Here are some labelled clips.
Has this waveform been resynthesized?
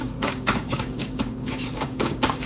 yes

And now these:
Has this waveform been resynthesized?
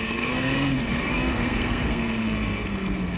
yes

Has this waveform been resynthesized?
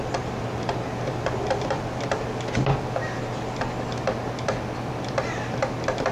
no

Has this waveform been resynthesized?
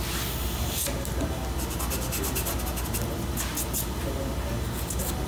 no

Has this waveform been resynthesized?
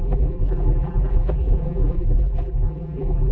yes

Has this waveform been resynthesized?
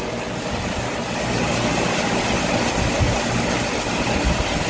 no